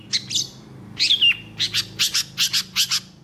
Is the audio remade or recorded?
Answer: recorded